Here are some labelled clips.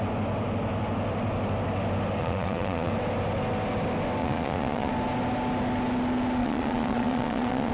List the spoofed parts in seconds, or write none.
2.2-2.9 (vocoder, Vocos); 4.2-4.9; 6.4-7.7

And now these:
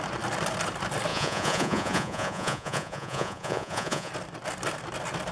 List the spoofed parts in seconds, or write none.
1.1-4.1 (vocoder, Vocos)

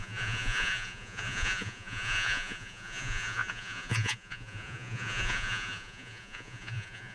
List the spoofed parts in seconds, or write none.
0.0-7.1 (vocoder, Vocos)